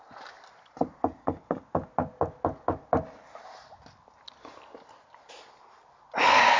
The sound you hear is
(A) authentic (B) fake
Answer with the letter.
A